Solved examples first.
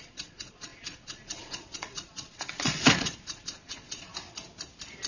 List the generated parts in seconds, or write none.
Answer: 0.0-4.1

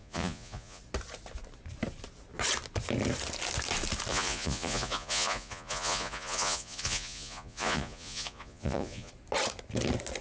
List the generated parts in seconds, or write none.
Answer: 0.0-0.8; 4.1-9.1

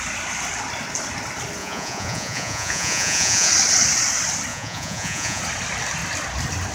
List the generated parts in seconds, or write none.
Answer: 1.6-3.5; 4.5-5.4